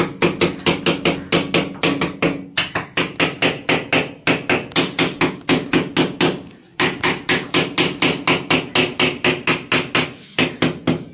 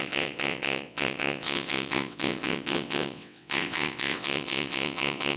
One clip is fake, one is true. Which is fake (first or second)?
second